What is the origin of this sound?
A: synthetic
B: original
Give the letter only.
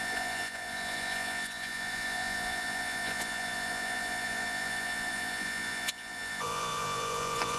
A